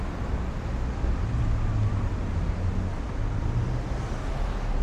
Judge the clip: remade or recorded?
recorded